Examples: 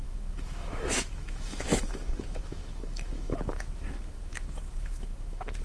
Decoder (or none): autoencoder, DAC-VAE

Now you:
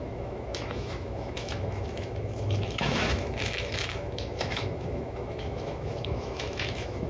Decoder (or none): autoencoder, DAC-VAE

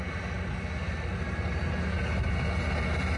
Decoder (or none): none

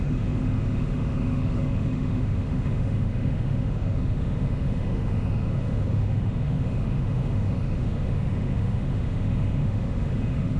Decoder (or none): autoencoder, DAC-VAE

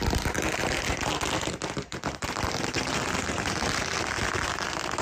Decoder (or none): none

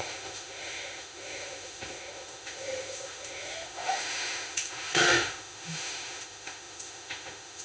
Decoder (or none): autoencoder, DAC-VAE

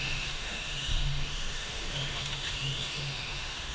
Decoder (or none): autoencoder, DAC-VAE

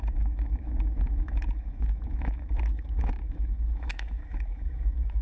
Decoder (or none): autoencoder, DAC-VAE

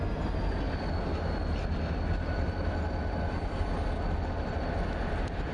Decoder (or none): none